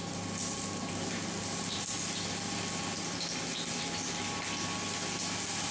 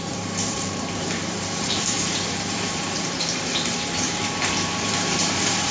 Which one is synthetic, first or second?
second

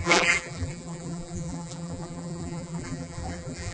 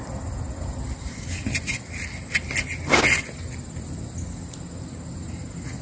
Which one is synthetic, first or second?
first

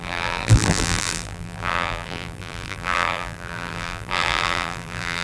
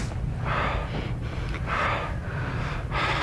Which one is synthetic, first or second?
first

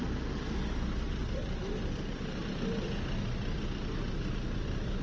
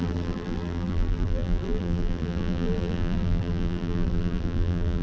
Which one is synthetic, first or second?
second